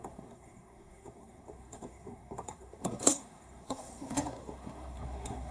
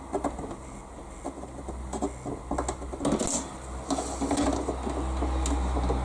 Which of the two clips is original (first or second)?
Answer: second